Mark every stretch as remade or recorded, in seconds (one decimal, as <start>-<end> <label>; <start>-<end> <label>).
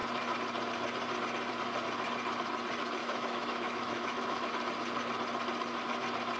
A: 0.0-3.0 recorded; 3.0-4.5 remade; 4.5-6.4 recorded